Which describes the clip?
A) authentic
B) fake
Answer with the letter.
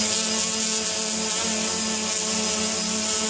A